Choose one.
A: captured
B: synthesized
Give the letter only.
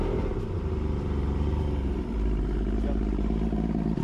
B